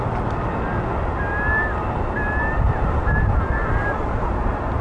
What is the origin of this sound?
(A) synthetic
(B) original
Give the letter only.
B